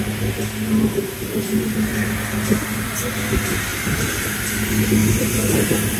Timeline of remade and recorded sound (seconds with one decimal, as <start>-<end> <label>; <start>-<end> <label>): 0.0-3.7 recorded; 3.7-4.3 remade; 4.3-5.0 recorded; 5.0-6.0 remade